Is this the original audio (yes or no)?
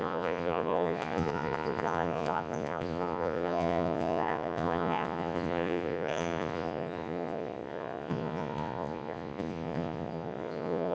no